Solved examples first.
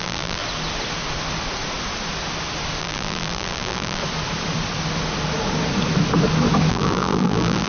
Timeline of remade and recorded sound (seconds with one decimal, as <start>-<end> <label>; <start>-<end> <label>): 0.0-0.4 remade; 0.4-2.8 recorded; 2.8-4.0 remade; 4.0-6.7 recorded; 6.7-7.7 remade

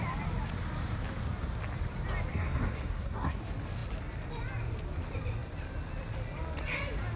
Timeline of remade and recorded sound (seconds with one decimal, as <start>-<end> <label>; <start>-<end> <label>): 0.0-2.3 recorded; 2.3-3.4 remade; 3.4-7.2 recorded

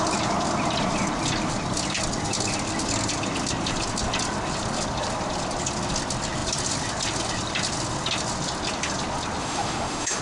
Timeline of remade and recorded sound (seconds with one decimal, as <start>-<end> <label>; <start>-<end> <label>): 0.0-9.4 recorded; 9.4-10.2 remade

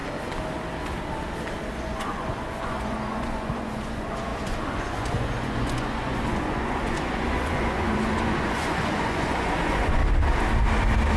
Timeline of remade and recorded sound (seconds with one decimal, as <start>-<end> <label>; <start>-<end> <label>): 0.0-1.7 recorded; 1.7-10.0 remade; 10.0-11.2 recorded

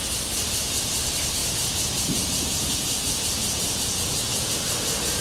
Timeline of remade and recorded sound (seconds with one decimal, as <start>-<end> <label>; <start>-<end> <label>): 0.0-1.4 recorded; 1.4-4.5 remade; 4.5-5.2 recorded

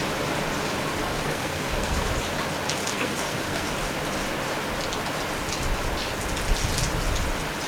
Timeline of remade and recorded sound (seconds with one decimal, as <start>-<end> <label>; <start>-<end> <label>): 0.0-1.0 recorded; 1.0-2.1 remade; 2.1-2.8 recorded; 2.8-3.7 remade; 3.7-7.7 recorded